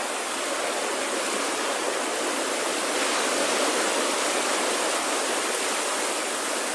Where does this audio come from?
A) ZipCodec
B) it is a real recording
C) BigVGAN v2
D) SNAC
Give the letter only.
B